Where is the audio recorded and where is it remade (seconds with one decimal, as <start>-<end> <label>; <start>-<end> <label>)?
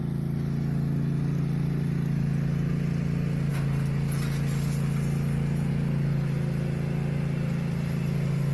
0.0-8.5 recorded